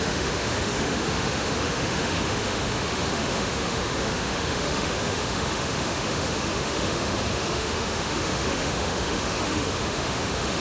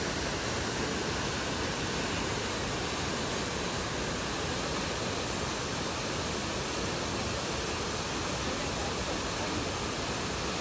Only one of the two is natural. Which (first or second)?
second